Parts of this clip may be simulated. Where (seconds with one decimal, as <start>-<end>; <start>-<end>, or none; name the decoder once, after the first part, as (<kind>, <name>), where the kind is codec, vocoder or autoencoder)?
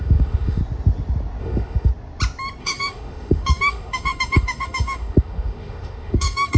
0.0-0.6 (autoencoder, DAC-VAE); 1.4-1.9; 2.6-6.6